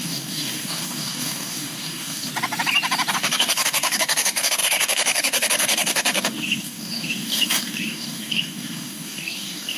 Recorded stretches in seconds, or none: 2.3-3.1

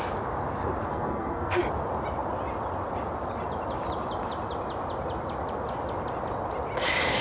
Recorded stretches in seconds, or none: 0.0-0.9; 1.6-7.2